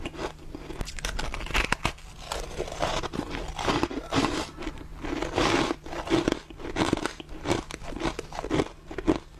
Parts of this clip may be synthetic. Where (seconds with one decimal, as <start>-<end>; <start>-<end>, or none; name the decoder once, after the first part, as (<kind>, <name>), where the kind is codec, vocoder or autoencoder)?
none